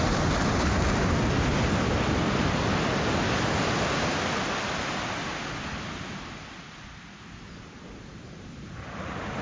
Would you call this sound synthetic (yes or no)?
no